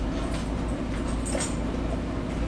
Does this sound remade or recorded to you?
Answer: recorded